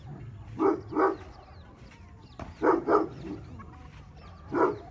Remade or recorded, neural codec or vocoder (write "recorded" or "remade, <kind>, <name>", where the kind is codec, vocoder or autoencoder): remade, vocoder, BigVGAN v2